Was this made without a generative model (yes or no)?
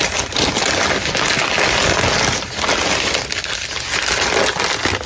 yes